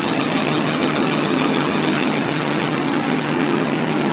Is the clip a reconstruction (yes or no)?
yes